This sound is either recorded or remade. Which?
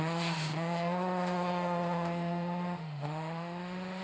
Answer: remade